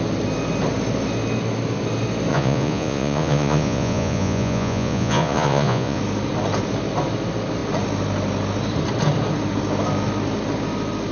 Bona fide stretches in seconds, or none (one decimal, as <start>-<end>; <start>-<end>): 0.0-2.3; 6.0-11.1